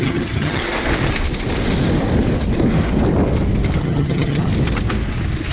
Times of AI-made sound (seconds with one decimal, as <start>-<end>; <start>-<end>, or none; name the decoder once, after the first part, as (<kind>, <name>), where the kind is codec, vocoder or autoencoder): 0.0-0.6 (vocoder, HiFi-GAN); 3.8-4.5